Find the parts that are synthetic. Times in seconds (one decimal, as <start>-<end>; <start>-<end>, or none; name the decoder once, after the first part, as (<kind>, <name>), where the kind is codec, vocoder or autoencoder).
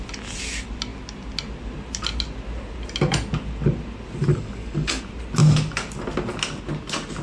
4.3-5.0 (codec, DAC)